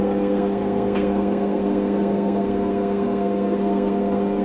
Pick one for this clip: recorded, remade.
remade